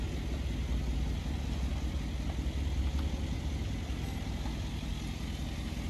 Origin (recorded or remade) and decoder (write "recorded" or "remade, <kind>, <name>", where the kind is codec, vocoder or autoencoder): recorded